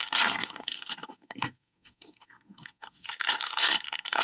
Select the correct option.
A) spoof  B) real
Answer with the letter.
A